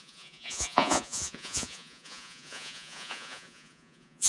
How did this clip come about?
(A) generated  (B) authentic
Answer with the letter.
A